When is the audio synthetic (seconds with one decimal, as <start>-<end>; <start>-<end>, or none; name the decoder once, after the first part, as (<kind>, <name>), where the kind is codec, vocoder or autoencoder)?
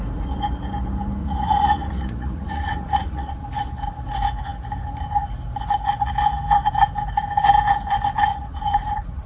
1.2-3.4 (vocoder, Vocos); 8.3-9.3